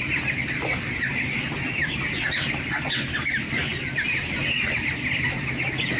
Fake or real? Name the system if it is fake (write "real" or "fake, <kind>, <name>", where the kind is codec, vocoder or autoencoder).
real